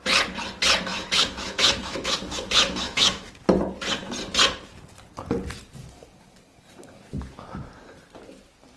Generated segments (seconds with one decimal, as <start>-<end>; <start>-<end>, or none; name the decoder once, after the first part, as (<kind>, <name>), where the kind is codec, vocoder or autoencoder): 0.9-3.3 (autoencoder, DAC-VAE)

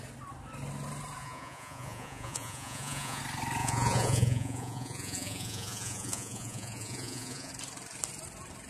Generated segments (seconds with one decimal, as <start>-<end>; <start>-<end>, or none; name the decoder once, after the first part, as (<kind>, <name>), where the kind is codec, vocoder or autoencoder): 1.2-3.2 (vocoder, Vocos); 3.6-7.5

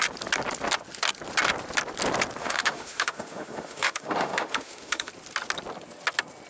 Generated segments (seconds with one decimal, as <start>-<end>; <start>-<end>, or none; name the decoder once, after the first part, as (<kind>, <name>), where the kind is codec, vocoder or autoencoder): 2.4-5.1 (autoencoder, DAC-VAE)

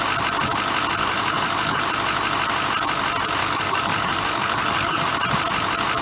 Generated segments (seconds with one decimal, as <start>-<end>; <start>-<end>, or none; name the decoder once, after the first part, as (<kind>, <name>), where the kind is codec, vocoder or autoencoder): 1.0-1.8 (codec, DAC); 3.4-5.1

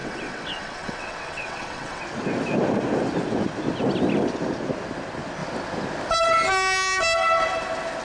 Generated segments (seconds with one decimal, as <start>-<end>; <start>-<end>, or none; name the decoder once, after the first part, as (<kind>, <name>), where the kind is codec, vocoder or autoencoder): 0.0-2.0 (vocoder, WaveNeXt)

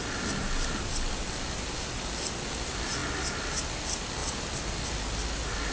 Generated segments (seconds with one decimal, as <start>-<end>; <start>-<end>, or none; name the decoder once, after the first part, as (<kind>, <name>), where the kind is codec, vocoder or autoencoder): none

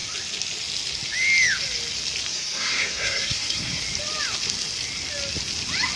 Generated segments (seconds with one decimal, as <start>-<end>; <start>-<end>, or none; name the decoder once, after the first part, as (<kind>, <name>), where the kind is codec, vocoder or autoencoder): 2.3-3.8 (codec, SNAC)